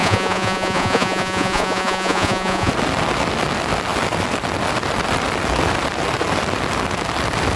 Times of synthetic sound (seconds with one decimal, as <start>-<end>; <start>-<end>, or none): 0.0-2.7